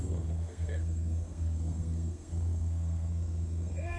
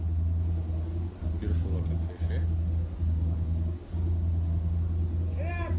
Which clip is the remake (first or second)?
first